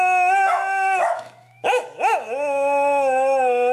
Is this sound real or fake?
fake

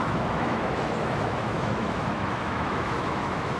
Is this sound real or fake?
fake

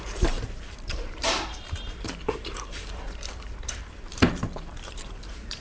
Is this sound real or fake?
fake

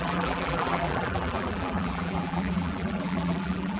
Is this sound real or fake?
fake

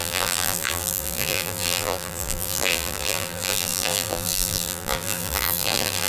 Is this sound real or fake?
fake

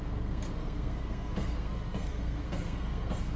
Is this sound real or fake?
fake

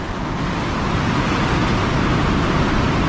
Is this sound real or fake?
real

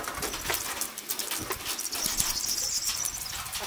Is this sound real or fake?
real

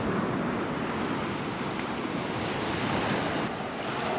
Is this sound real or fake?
fake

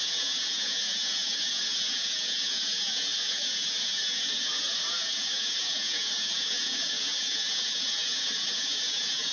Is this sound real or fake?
fake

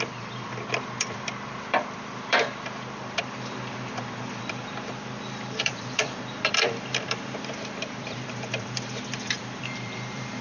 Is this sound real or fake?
fake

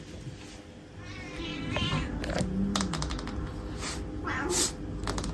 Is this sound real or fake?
real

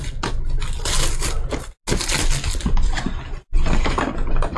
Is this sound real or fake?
real